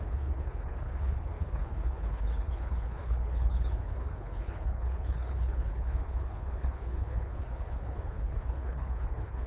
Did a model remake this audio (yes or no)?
yes